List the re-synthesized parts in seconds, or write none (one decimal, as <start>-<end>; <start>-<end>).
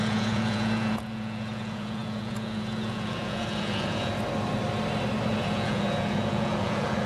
0.0-4.1; 5.3-7.1